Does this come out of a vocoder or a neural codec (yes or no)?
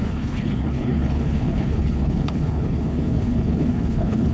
yes